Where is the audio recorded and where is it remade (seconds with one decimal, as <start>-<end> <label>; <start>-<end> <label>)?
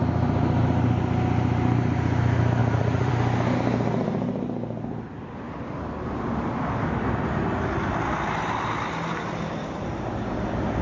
0.0-2.6 recorded; 2.6-3.1 remade; 3.1-10.8 recorded